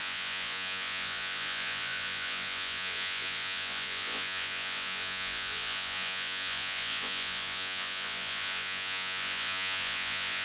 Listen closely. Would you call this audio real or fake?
fake